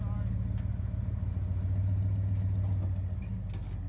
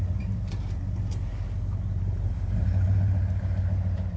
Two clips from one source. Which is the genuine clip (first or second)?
first